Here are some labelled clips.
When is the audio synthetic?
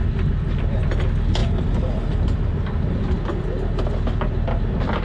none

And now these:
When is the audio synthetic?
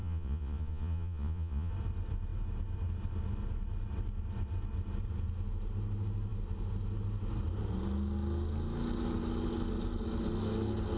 0.0-1.7